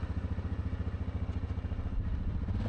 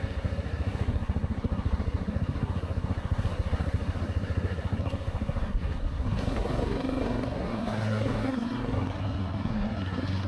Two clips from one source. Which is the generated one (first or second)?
second